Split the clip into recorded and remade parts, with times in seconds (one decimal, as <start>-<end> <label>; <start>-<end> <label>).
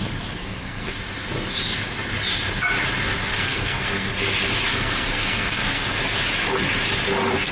0.0-0.4 recorded; 0.4-0.9 remade; 0.9-3.3 recorded; 3.3-4.1 remade; 4.1-4.7 recorded; 4.7-6.0 remade; 6.0-7.5 recorded